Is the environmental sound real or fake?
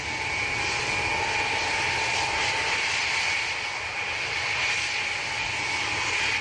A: real